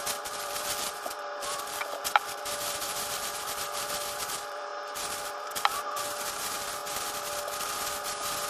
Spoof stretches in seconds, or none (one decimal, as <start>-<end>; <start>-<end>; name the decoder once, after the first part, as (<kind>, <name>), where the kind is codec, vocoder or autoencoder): 0.0-4.7 (vocoder, BigVGAN v2); 5.3-6.8